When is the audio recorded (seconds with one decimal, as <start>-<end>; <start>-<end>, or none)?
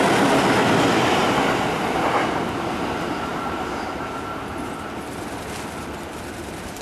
0.0-6.8